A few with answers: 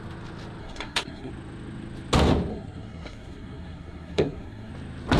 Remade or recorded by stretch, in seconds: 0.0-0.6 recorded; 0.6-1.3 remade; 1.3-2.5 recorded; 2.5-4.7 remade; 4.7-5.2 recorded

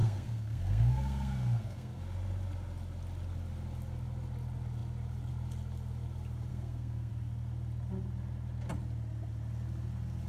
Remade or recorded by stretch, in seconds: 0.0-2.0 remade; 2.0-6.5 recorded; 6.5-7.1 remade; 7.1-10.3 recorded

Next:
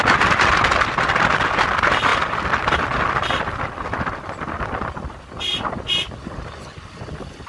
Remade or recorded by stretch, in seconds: 0.0-2.1 recorded; 2.1-2.8 remade; 2.8-7.5 recorded

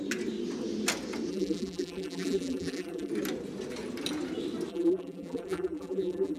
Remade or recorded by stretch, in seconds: 0.0-1.3 recorded; 1.3-3.1 remade; 3.1-4.7 recorded; 4.7-6.4 remade

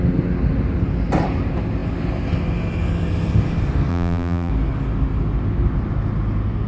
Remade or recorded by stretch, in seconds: 0.0-3.9 recorded; 3.9-4.5 remade; 4.5-6.7 recorded

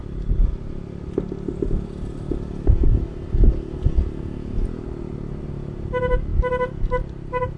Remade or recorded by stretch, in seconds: 0.0-7.6 recorded